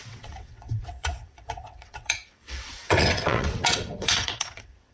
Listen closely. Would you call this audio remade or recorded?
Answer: remade